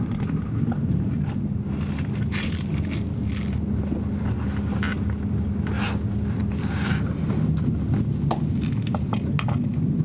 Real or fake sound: real